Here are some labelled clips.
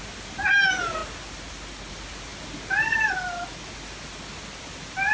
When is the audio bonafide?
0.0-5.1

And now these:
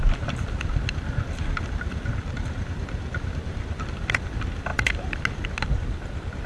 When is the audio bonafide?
0.0-6.5

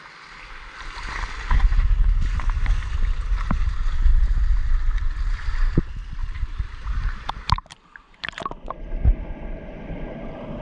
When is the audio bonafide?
0.0-6.2; 8.8-10.6

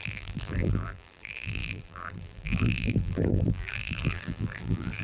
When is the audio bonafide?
none

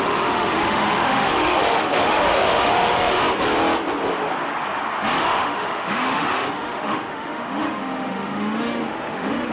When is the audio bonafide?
3.2-5.2